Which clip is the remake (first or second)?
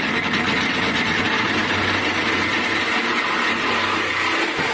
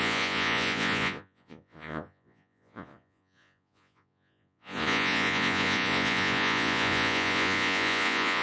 second